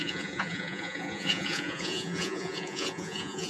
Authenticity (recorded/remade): remade